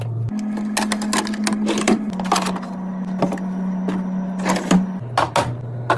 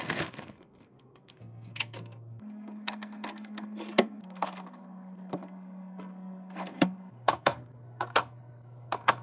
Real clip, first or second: first